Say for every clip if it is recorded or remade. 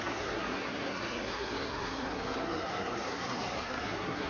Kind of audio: remade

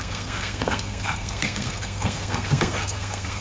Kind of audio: remade